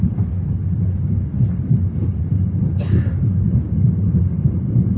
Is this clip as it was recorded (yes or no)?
yes